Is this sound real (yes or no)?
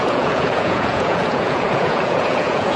no